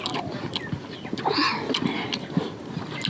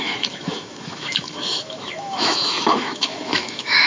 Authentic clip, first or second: first